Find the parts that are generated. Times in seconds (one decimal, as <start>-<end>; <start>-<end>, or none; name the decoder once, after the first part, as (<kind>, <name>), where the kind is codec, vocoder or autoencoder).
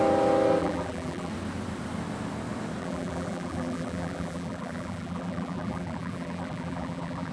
0.6-1.3 (vocoder, BigVGAN v2); 2.8-7.3